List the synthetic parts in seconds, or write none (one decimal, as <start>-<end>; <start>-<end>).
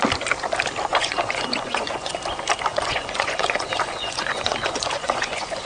0.9-2.1; 2.7-5.7